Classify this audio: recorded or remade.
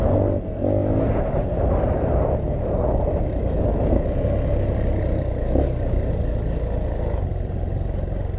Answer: recorded